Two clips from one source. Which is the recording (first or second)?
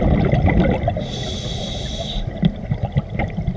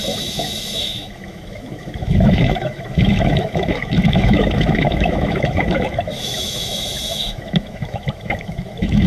first